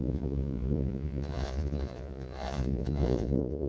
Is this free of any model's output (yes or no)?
no